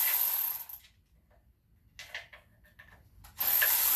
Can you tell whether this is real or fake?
real